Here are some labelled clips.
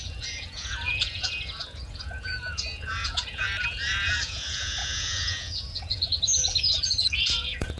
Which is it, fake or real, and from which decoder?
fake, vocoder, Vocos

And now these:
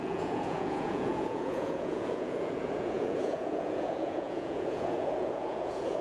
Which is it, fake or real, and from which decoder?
fake, vocoder, Vocos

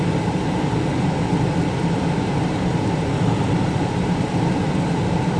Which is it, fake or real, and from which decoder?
real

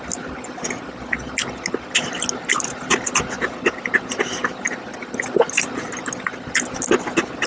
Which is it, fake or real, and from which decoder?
real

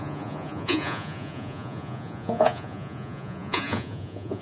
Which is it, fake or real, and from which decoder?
fake, vocoder, Vocos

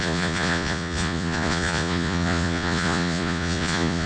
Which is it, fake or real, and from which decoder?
fake, vocoder, Vocos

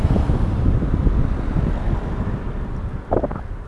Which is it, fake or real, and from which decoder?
real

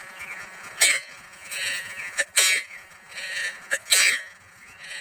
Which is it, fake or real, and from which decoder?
fake, vocoder, Vocos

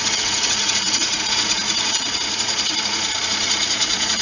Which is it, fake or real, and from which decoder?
fake, vocoder, Vocos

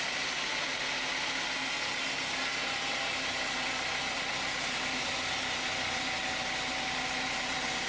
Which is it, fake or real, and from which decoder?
real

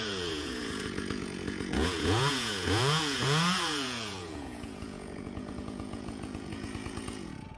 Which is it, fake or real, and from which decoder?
fake, vocoder, Vocos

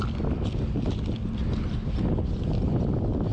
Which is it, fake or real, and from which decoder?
real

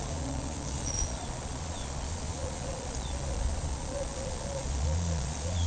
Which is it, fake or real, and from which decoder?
fake, vocoder, Vocos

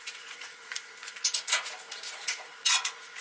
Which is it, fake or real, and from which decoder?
fake, vocoder, Vocos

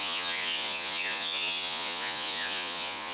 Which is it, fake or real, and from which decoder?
fake, vocoder, Vocos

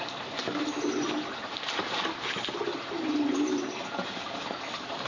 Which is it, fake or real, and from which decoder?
real